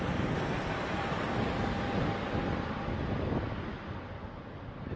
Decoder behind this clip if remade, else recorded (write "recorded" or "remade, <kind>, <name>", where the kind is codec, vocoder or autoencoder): recorded